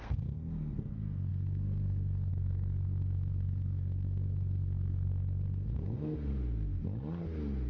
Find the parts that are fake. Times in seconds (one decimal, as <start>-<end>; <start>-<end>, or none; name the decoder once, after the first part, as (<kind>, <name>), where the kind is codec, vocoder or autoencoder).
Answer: 0.0-6.3 (codec, SNAC)